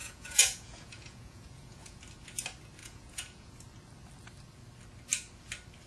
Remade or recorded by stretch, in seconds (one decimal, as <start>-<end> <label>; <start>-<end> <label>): 0.0-2.0 remade; 2.0-2.8 recorded; 2.8-3.5 remade; 3.5-5.9 recorded